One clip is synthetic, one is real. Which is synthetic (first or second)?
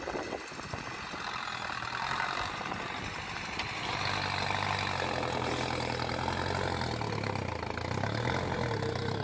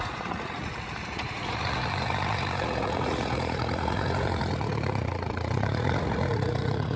second